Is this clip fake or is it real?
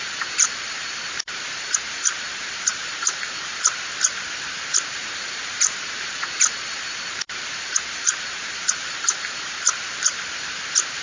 fake